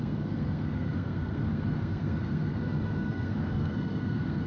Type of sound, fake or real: fake